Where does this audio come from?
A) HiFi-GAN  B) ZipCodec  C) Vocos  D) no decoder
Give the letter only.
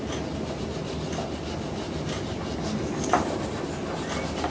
D